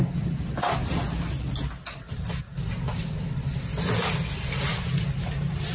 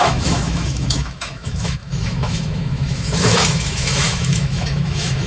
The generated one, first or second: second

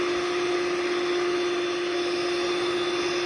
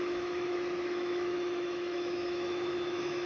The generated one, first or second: second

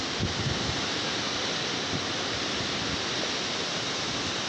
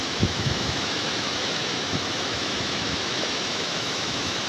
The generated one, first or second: second